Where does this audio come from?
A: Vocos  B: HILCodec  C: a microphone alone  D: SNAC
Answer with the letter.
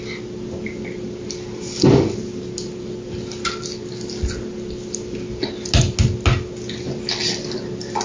C